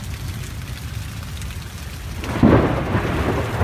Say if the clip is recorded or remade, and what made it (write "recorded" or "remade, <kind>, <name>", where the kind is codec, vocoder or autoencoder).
recorded